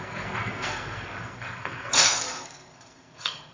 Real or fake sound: fake